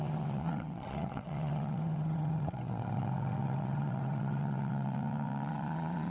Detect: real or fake fake